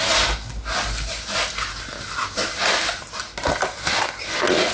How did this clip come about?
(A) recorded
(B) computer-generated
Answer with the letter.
A